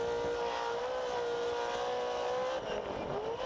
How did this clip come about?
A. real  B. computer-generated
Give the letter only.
A